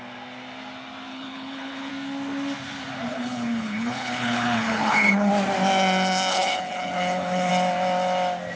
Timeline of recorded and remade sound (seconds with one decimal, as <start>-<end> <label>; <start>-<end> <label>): 0.0-1.1 recorded; 1.1-1.9 remade; 1.9-3.1 recorded; 3.1-5.3 remade; 5.3-6.3 recorded; 6.3-7.5 remade; 7.5-8.6 recorded